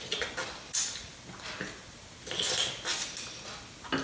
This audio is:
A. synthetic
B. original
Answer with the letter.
B